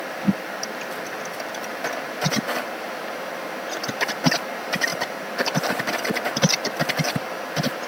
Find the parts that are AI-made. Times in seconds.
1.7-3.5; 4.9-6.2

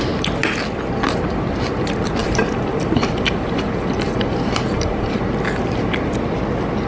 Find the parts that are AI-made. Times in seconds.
2.2-5.2

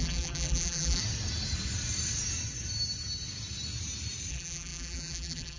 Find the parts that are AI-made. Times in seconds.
0.0-1.0; 4.3-5.6

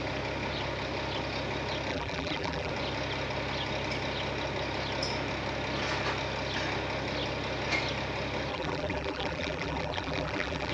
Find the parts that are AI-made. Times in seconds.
1.9-2.7; 8.5-10.7

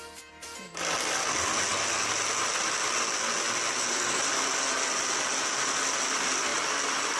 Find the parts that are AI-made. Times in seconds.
none

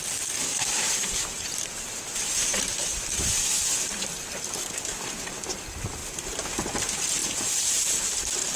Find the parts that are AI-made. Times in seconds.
0.5-3.4

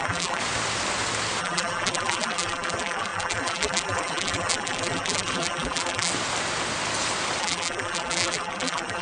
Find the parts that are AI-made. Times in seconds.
0.0-0.4; 1.4-6.1; 7.4-9.0